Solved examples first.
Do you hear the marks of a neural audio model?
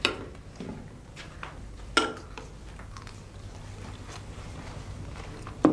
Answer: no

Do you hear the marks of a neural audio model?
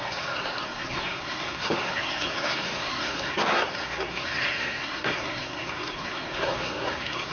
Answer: yes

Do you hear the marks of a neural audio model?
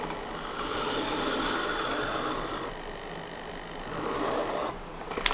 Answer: no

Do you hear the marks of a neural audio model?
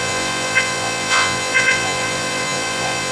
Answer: yes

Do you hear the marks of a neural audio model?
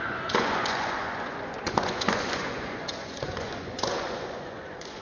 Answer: yes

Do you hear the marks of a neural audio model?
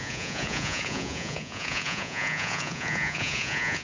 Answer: yes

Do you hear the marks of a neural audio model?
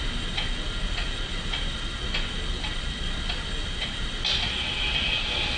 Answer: no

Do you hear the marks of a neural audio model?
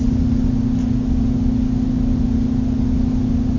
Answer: no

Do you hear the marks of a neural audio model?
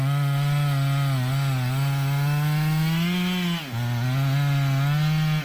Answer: no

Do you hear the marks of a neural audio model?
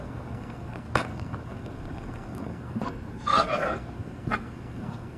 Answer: yes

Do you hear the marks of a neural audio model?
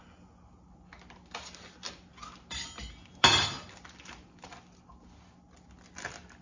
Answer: no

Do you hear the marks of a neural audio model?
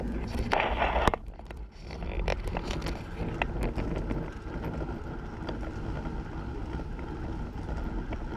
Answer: no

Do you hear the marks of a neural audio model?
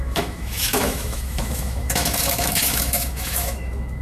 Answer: yes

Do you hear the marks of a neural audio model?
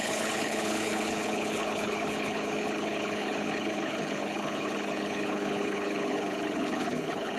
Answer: yes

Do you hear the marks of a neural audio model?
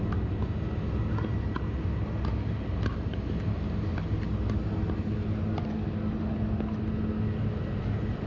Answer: no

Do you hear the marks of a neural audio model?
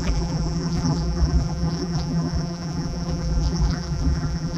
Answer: yes